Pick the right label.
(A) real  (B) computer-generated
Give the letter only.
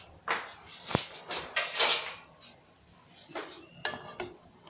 A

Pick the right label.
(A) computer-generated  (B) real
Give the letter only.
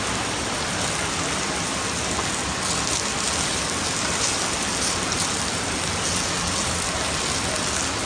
B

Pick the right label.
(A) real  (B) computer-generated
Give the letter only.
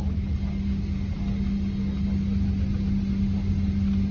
A